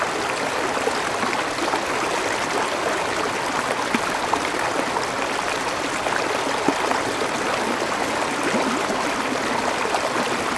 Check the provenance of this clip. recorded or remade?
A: recorded